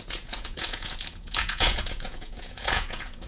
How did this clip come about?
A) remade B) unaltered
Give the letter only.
A